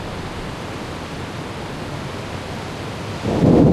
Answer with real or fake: fake